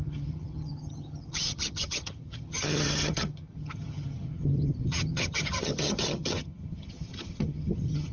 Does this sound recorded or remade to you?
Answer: remade